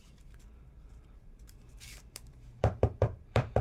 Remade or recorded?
remade